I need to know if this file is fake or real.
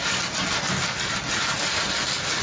real